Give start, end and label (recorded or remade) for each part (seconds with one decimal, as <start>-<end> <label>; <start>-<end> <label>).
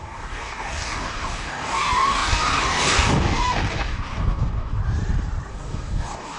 0.0-4.8 remade; 4.8-5.5 recorded; 5.5-6.4 remade